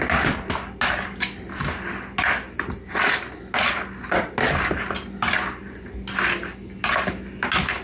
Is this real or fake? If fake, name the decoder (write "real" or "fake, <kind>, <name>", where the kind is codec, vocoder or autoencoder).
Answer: real